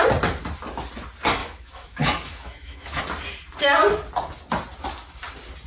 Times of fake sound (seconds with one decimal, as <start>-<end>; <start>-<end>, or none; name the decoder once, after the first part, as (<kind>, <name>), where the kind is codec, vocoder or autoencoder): 1.4-3.0 (autoencoder, DAC-VAE)